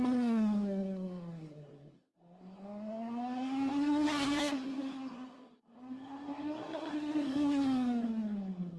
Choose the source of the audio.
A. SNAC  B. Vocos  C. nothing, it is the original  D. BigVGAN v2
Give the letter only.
A